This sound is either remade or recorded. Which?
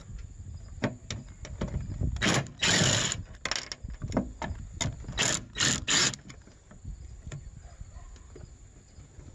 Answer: recorded